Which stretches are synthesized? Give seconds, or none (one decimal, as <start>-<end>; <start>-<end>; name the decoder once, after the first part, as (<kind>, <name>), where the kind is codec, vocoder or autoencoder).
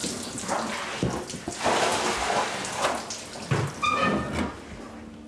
none